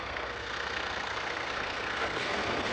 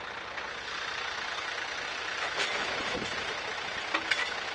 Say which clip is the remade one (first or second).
first